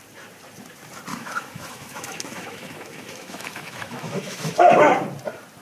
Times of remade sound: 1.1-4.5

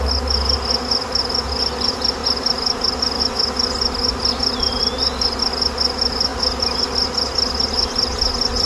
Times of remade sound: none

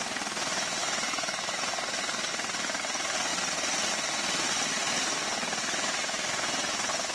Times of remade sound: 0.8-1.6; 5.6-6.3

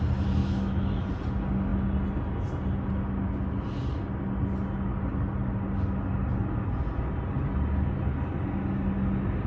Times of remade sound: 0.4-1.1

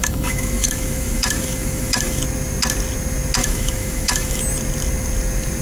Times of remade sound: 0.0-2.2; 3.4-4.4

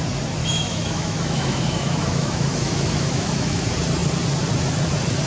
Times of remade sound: 0.4-3.6

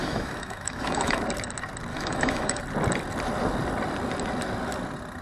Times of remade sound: 0.0-1.2; 1.9-2.6